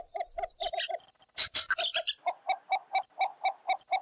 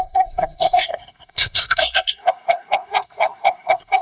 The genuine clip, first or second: first